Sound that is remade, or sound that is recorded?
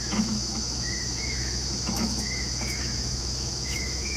remade